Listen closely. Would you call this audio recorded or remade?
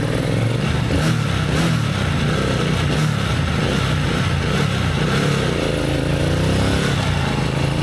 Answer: recorded